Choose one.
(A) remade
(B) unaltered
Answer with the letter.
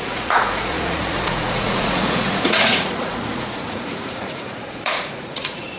A